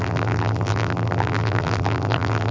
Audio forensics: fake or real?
fake